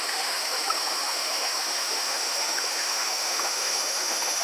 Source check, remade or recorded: remade